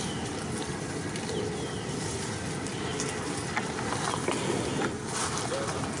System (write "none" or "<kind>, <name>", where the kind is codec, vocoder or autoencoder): none